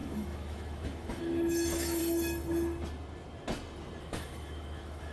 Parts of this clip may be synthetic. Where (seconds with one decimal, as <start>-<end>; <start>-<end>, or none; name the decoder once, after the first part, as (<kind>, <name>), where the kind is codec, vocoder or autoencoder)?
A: 0.0-2.0 (autoencoder, DAC-VAE); 4.0-5.1